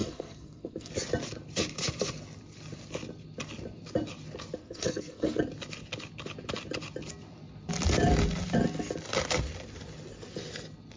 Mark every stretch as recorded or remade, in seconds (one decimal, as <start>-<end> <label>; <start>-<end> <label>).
0.0-0.9 remade; 0.9-4.6 recorded; 4.6-5.4 remade; 5.4-11.0 recorded